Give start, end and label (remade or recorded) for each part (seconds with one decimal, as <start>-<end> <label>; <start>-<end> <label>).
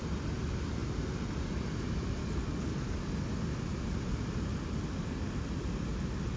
0.0-2.2 recorded; 2.2-3.1 remade; 3.1-6.4 recorded